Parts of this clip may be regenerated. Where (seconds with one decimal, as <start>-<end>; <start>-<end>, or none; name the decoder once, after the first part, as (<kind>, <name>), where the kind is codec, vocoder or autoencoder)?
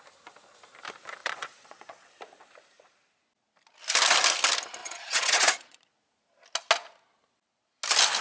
1.2-2.1 (vocoder, Vocos); 4.8-5.9